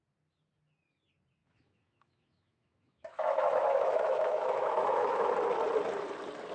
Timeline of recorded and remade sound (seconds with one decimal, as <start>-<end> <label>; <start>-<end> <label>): 0.0-1.4 recorded; 1.4-5.3 remade; 5.3-6.5 recorded